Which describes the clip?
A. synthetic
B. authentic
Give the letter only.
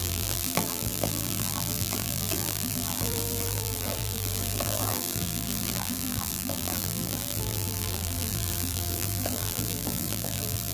A